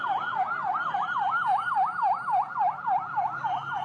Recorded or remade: remade